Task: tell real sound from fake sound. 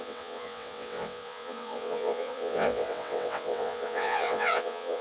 fake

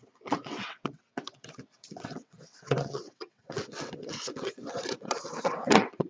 fake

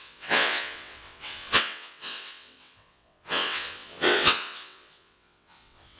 fake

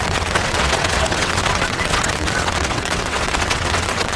fake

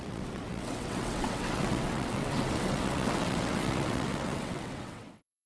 fake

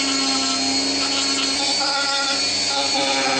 real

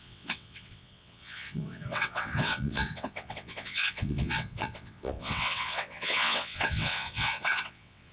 fake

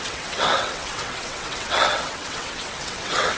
fake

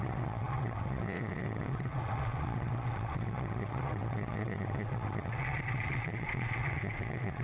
fake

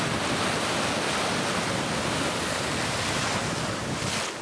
real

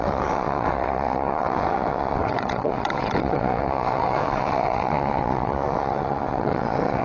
fake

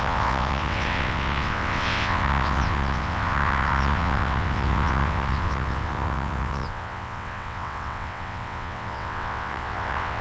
fake